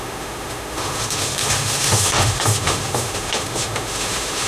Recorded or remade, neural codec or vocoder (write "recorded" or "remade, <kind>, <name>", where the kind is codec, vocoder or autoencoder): remade, autoencoder, DAC-VAE